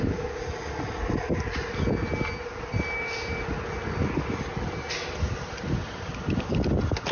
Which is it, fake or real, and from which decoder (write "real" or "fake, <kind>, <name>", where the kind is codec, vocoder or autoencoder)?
real